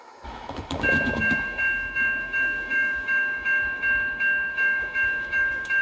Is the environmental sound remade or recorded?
remade